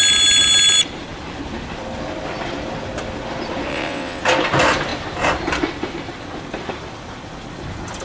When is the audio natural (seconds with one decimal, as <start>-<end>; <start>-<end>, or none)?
0.0-3.7; 4.2-8.0